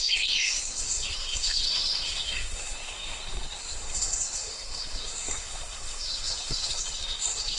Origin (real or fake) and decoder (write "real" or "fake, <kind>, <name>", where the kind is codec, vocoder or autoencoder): fake, codec, SNAC